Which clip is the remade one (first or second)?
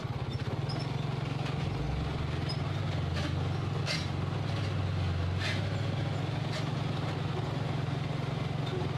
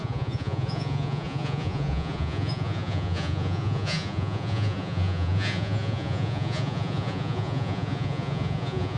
second